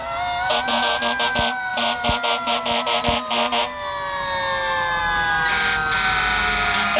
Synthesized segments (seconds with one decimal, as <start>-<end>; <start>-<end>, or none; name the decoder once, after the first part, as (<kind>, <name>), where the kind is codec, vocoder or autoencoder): none